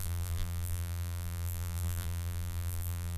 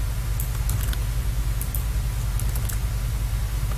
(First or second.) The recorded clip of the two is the second